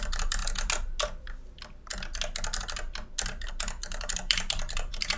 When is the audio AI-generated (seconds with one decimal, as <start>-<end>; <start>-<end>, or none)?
0.0-0.4; 3.5-5.2